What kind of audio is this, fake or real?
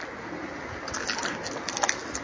real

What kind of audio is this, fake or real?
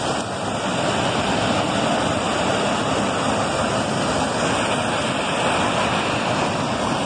real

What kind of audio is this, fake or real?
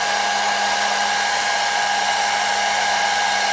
fake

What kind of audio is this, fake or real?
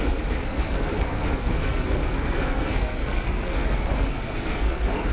fake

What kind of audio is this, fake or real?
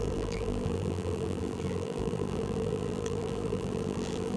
fake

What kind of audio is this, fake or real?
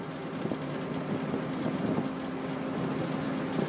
real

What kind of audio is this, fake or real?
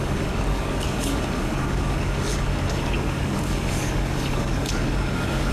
fake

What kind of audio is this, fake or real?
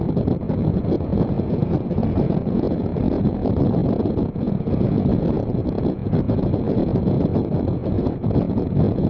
fake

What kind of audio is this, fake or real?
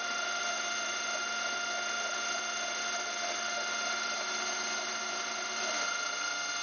real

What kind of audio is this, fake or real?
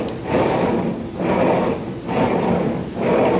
real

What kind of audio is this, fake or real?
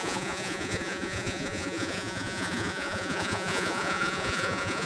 fake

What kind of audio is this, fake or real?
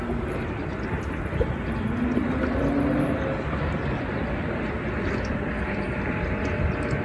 real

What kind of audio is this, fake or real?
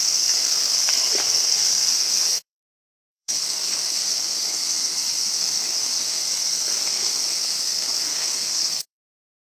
fake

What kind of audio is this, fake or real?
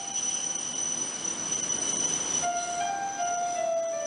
real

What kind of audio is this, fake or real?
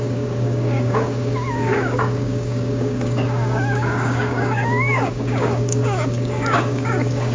fake